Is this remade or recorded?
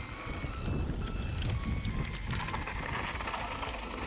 recorded